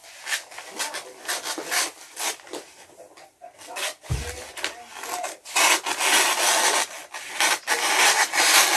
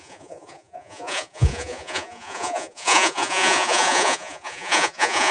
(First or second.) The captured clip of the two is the first